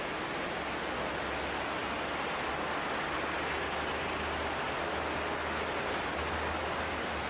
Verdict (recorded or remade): recorded